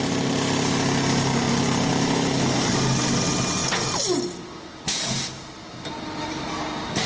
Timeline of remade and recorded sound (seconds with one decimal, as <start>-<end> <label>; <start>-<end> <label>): 0.0-1.9 recorded; 1.9-2.6 remade; 2.6-7.1 recorded